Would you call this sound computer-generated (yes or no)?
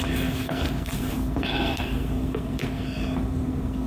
yes